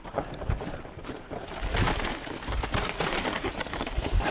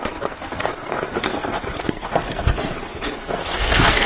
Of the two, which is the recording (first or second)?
first